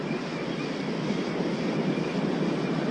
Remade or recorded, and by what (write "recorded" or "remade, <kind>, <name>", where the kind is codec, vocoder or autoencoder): recorded